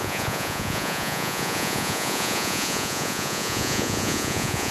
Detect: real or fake fake